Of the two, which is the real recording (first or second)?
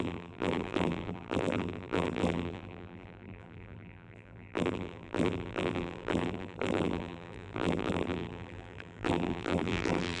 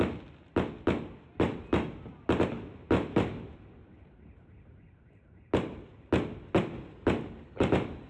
second